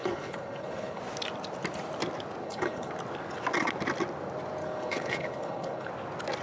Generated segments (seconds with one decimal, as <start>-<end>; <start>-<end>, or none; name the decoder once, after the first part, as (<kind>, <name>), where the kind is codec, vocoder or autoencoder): 0.0-1.0 (codec, HILCodec); 2.4-2.9; 4.6-5.9